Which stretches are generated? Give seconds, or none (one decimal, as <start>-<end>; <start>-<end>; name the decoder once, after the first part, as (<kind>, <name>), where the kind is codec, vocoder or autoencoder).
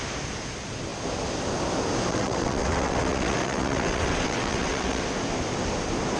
2.1-5.0 (vocoder, WaveNeXt)